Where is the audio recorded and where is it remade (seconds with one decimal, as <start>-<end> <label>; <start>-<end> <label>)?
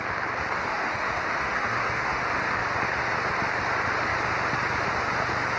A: 0.0-0.6 recorded; 0.6-2.2 remade; 2.2-5.6 recorded